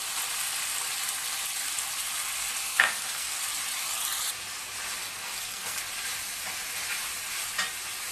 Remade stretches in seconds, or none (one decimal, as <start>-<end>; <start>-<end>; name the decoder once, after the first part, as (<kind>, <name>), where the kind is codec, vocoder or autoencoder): 2.6-3.4 (codec, SNAC); 5.0-5.8